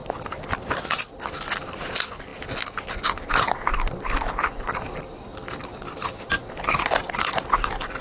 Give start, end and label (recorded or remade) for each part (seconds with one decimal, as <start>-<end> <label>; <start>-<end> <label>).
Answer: 0.0-8.0 recorded